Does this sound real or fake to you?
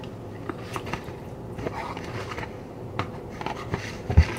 fake